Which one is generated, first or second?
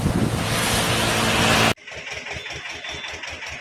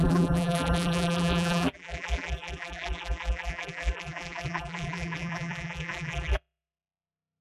second